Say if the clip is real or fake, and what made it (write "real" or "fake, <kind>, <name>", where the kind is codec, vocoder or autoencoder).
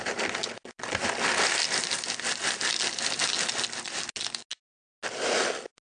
real